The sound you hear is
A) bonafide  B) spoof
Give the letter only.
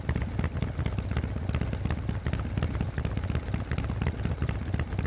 A